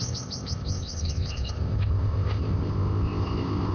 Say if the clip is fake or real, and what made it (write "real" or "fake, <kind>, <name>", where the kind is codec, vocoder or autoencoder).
fake, codec, ZipCodec